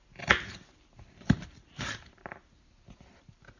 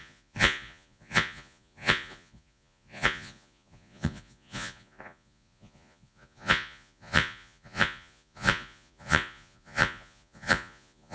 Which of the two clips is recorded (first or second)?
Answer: first